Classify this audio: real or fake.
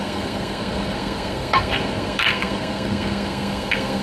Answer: fake